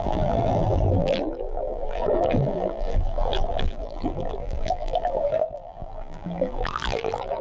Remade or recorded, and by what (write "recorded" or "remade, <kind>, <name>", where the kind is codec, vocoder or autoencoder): remade, vocoder, BigVGAN v2